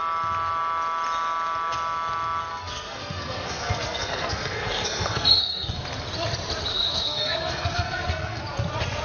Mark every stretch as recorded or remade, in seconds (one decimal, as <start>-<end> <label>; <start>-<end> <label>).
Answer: 0.0-2.5 recorded; 2.5-5.7 remade; 5.7-6.7 recorded; 6.7-8.4 remade; 8.4-9.0 recorded